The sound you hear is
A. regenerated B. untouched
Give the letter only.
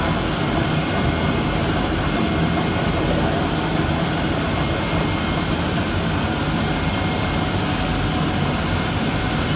B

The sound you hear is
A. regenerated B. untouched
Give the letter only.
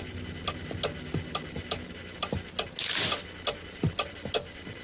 B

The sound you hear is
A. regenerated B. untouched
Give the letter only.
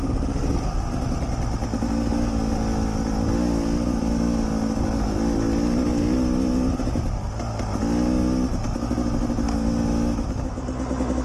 B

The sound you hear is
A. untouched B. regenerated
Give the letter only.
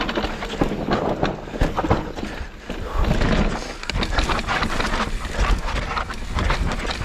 A